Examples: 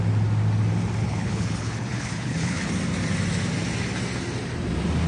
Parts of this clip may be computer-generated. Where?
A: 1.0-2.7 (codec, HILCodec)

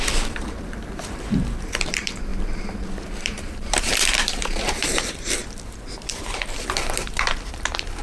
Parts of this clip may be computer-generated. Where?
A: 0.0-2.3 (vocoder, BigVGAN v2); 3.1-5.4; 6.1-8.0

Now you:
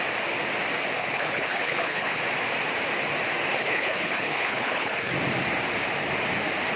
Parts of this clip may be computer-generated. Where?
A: 1.0-2.2 (codec, HILCodec); 3.5-5.1

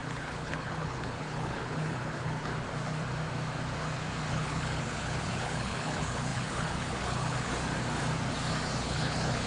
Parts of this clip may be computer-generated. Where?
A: 0.0-2.5 (codec, HILCodec); 4.3-7.5; 8.8-9.5